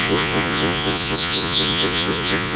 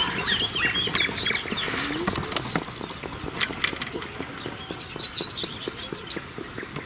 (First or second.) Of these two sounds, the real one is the second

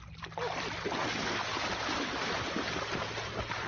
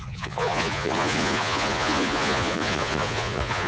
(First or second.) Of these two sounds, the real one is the first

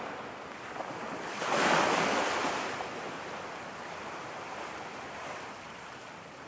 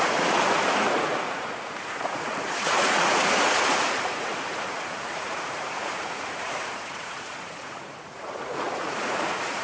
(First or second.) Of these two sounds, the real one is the first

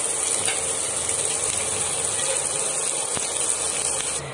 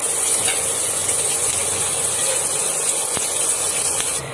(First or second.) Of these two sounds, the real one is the first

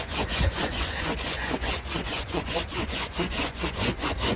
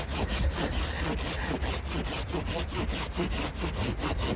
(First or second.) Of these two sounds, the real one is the second